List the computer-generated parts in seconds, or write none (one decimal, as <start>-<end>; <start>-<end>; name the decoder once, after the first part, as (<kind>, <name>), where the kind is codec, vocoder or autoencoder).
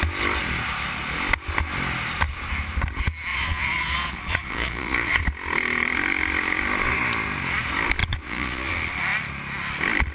3.3-5.2 (vocoder, Vocos); 8.0-8.7